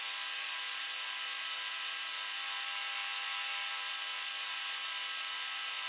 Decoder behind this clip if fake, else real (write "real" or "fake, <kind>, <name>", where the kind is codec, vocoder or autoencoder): real